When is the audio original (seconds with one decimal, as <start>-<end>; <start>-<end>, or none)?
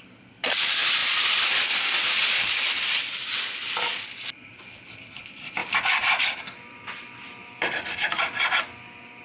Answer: 0.0-1.0; 4.4-5.6; 6.4-7.4; 8.6-9.2